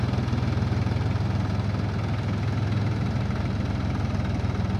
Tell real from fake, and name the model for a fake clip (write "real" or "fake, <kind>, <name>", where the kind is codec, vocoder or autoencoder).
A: real